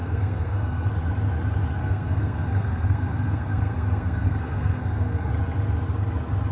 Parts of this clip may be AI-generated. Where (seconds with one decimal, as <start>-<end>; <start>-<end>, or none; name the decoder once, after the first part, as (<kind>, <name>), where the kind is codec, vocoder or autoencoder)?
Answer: 0.0-0.9 (codec, SNAC); 1.8-5.3

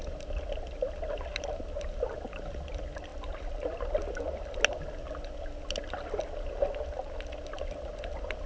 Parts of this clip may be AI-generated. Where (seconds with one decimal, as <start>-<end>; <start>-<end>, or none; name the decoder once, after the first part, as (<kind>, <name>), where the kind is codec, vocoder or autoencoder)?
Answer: none

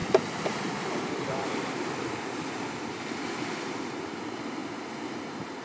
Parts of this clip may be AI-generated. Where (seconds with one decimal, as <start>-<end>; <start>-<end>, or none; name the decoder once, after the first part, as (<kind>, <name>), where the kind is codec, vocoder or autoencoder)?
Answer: none

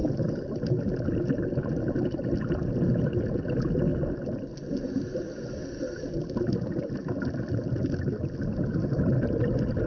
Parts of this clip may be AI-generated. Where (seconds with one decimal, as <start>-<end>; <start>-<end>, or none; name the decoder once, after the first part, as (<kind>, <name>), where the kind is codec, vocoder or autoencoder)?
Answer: none

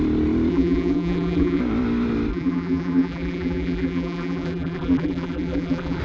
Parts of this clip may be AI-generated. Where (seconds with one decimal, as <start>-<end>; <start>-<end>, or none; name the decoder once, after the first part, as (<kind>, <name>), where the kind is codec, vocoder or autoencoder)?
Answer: 0.5-1.6 (vocoder, BigVGAN v2); 2.3-6.0